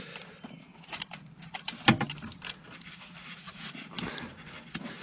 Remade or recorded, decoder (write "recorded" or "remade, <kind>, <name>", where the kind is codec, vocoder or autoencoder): recorded